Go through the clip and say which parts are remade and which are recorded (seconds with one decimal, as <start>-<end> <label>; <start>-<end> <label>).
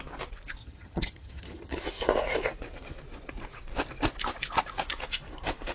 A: 0.0-0.6 recorded; 0.6-1.8 remade; 1.8-5.7 recorded